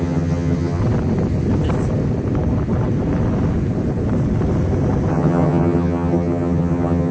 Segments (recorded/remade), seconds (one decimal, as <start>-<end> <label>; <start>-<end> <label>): 0.0-0.8 remade; 0.8-5.1 recorded; 5.1-7.1 remade